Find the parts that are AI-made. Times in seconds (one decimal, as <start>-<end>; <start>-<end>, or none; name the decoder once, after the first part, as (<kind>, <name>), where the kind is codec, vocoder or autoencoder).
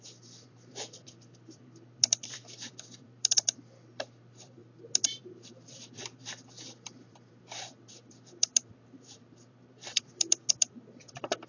0.0-4.6 (vocoder, BigVGAN v2); 5.2-11.5